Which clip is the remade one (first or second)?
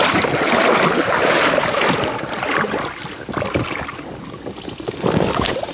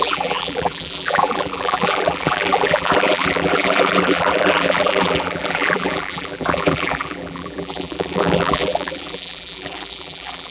second